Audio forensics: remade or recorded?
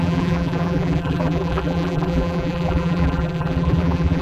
remade